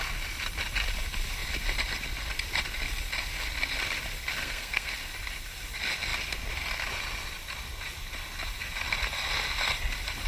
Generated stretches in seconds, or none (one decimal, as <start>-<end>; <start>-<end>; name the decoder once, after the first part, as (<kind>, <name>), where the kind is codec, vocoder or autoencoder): 4.4-4.9 (codec, SNAC)